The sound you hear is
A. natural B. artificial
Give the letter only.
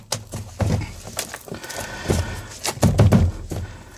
A